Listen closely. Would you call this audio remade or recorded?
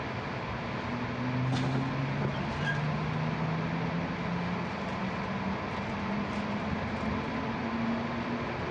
recorded